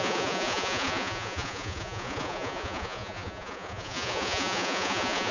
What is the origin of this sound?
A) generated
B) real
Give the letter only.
A